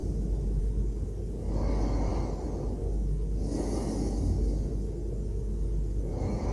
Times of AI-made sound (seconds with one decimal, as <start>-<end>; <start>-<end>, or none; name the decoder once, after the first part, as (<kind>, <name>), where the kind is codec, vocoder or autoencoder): 0.6-2.1 (codec, DAC); 2.8-6.5